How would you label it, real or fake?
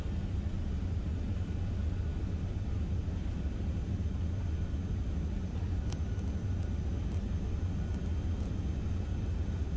real